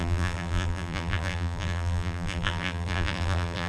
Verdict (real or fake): fake